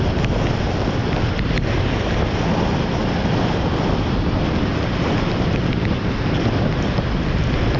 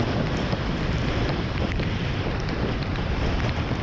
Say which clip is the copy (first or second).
second